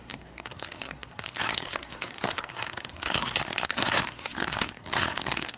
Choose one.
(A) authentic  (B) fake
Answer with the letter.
B